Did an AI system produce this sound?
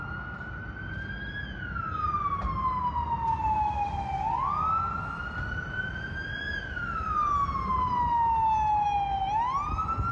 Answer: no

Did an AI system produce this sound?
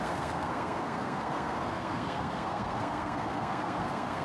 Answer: yes